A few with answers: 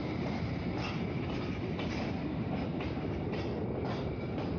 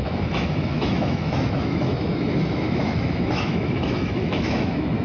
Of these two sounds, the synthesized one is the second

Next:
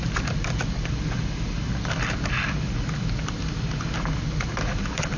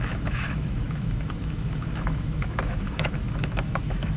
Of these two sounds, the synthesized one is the second